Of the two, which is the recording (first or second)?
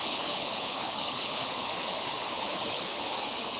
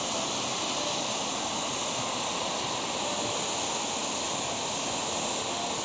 second